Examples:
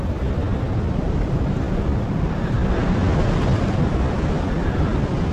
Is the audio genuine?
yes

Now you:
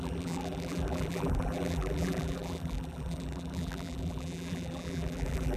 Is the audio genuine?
no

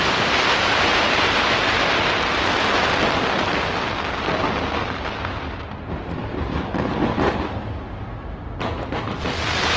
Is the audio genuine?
yes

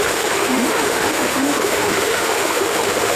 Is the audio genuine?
no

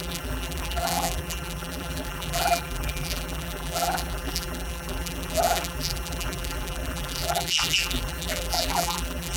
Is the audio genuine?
no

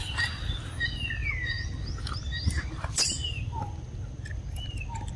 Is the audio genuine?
yes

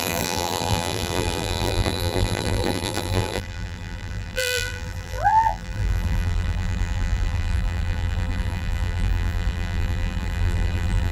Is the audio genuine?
no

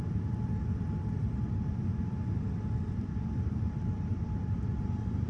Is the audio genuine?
no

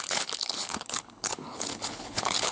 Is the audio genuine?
no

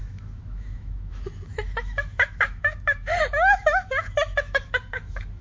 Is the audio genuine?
no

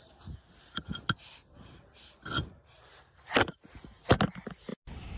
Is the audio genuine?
yes